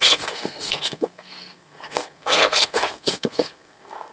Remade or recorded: remade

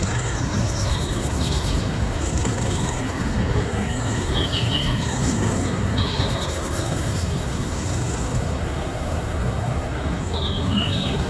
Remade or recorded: remade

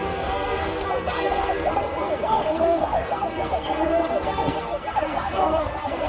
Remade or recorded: remade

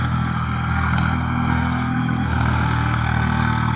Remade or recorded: remade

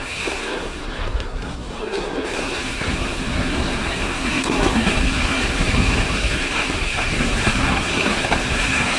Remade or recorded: remade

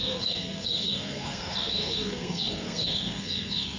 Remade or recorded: remade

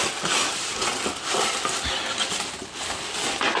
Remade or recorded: recorded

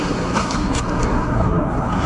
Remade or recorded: remade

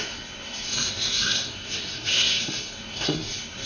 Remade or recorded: remade